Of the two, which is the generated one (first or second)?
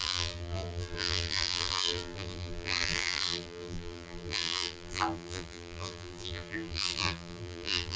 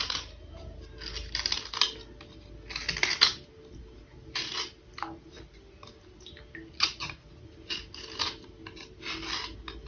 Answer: first